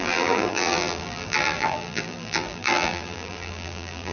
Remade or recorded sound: remade